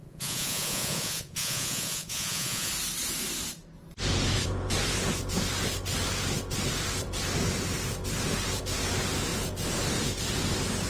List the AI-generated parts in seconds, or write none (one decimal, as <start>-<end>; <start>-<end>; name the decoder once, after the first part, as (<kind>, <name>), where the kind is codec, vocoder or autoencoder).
0.0-2.7 (vocoder, Vocos)